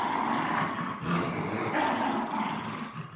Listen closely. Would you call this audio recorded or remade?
recorded